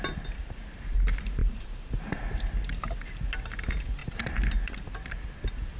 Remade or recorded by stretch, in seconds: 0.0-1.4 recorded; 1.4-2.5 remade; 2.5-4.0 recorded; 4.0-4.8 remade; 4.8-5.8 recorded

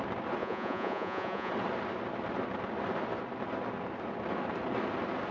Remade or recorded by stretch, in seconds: 0.0-0.4 recorded; 0.4-1.5 remade; 1.5-5.3 recorded

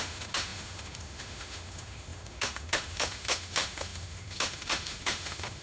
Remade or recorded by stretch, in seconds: 0.0-5.6 remade

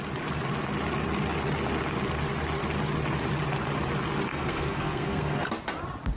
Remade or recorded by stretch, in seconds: 0.0-4.3 recorded; 4.3-5.5 remade; 5.5-6.2 recorded

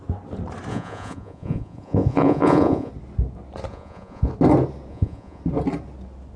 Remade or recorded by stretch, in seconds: 0.0-0.7 recorded; 0.7-2.9 remade; 2.9-3.7 recorded; 3.7-4.3 remade; 4.3-4.9 recorded; 4.9-5.4 remade; 5.4-6.4 recorded

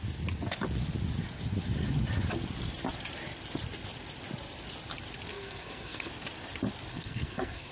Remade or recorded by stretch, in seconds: 0.0-5.3 recorded; 5.3-6.1 remade; 6.1-6.9 recorded; 6.9-7.7 remade

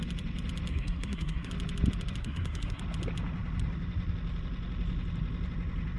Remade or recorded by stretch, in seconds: 0.0-0.7 recorded; 0.7-1.5 remade; 1.5-2.2 recorded; 2.2-2.8 remade; 2.8-6.0 recorded